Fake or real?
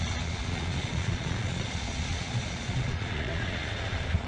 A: fake